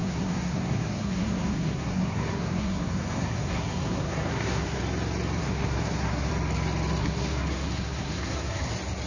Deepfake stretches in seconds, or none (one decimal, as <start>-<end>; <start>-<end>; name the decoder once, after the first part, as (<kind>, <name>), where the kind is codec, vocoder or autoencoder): 0.0-4.8 (codec, SNAC); 5.4-6.3; 7.0-8.7